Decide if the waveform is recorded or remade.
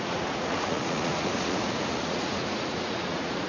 remade